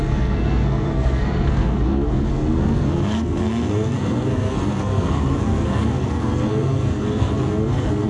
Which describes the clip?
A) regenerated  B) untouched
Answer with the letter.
A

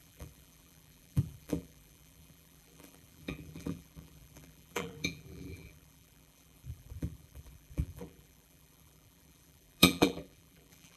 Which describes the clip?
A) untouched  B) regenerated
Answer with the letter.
B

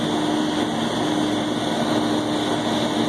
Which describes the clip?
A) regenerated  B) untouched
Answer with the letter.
B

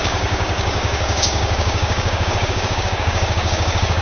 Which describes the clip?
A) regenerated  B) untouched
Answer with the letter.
A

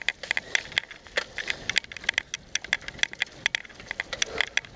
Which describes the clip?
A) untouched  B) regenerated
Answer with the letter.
A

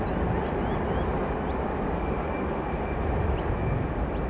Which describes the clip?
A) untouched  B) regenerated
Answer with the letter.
A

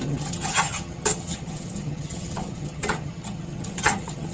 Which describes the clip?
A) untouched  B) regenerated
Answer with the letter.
B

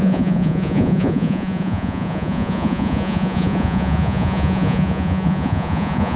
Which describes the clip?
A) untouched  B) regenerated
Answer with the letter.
B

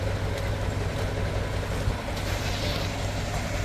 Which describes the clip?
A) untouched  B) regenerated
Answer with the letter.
A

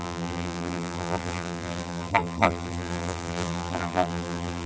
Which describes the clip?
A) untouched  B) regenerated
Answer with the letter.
B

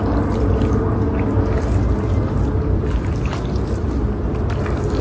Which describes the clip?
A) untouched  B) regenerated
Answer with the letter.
A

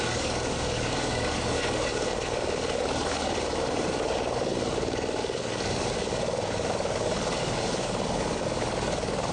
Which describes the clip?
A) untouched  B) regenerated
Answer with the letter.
B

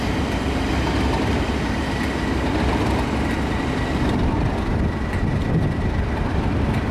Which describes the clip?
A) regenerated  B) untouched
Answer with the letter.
B